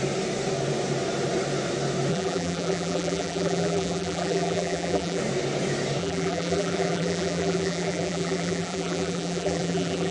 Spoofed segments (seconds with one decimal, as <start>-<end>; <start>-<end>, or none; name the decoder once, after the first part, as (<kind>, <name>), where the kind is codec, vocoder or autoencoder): 2.1-5.2 (vocoder, BigVGAN v2); 6.0-10.1